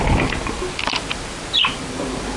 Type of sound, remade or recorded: recorded